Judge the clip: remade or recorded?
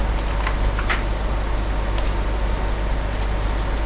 recorded